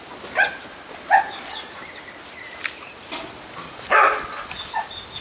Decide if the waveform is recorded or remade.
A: recorded